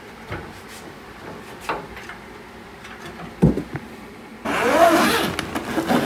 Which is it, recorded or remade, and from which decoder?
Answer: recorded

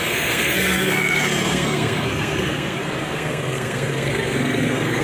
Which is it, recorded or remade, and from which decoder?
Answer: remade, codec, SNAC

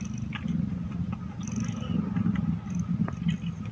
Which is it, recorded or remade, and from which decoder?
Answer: recorded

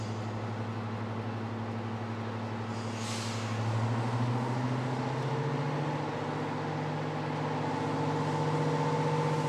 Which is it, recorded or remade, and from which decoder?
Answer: recorded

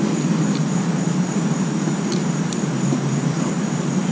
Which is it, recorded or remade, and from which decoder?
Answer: recorded